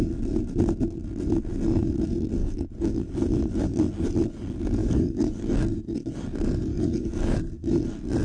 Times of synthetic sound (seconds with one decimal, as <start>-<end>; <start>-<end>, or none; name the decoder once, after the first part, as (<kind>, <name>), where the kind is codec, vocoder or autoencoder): 2.4-3.1 (codec, DAC); 4.8-5.3; 6.7-7.4